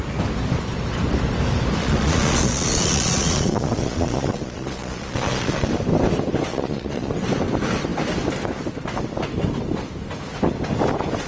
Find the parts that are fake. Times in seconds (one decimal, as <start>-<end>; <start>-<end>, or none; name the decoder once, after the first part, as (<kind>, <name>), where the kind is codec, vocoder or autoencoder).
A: 1.8-5.7 (vocoder, Vocos); 6.5-7.1